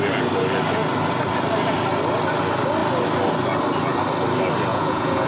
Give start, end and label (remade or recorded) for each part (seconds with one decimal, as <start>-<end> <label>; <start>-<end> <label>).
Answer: 0.0-4.7 recorded; 4.7-5.3 remade